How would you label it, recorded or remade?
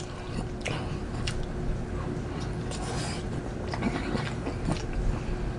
recorded